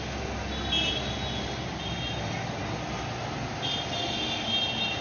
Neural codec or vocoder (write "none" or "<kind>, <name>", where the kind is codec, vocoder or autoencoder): none